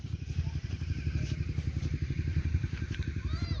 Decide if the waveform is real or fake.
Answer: fake